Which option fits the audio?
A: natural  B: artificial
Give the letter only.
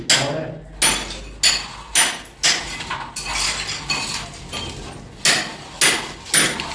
A